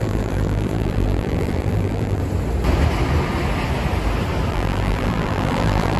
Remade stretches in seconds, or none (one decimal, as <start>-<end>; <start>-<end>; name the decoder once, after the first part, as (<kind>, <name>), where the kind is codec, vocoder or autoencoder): 0.0-2.2 (vocoder, BigVGAN v2); 4.5-6.0